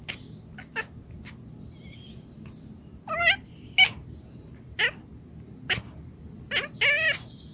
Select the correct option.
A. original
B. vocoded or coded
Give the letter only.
A